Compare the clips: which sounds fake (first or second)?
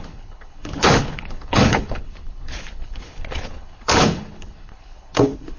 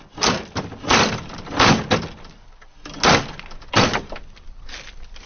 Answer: first